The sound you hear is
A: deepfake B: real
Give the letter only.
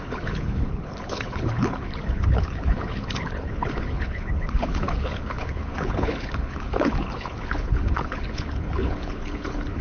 A